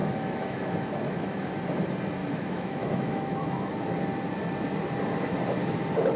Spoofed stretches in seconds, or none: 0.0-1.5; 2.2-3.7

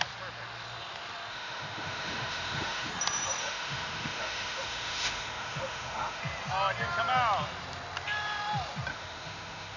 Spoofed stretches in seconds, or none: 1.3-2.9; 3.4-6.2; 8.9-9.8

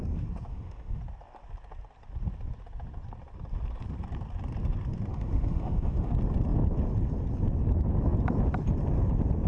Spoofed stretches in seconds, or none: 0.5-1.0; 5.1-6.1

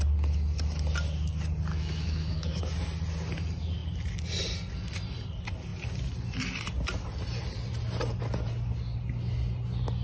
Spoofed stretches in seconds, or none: 1.7-2.6